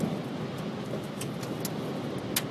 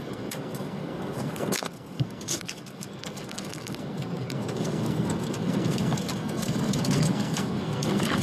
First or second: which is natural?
first